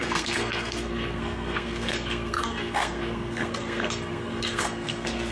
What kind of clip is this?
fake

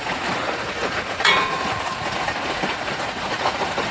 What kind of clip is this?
fake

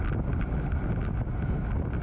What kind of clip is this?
real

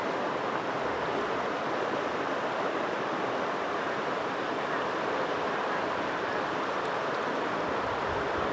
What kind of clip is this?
fake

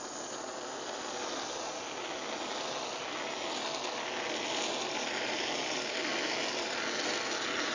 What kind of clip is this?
real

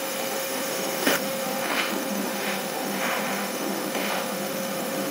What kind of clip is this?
fake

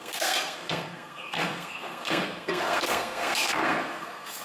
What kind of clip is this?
fake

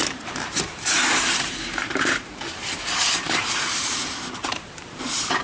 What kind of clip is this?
fake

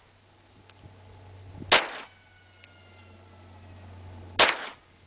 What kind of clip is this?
real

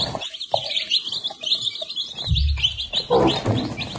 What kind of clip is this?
real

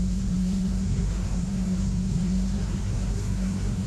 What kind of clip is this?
fake